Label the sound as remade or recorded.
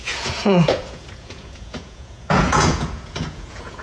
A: remade